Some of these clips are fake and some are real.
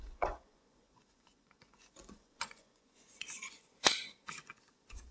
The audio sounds fake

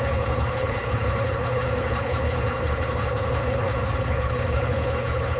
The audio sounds fake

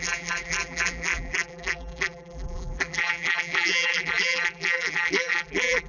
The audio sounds fake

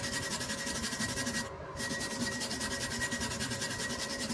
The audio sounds real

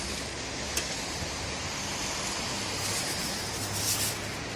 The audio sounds real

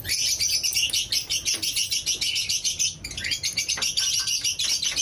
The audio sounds real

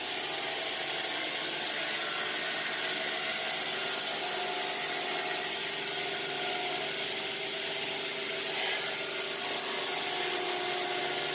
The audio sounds real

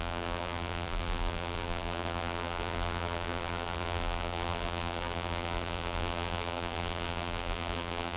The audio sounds fake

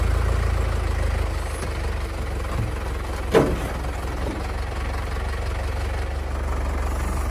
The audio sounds real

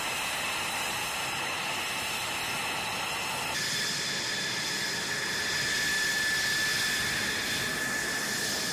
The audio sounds real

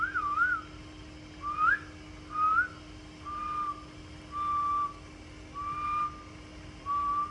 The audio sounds real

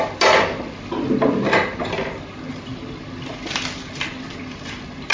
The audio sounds real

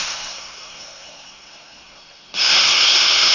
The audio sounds fake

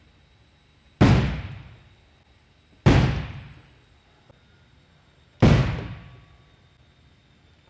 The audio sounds real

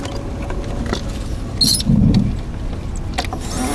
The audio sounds real